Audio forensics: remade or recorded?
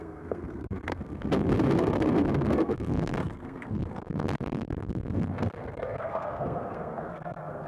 remade